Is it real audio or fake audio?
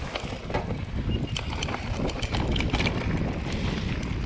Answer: real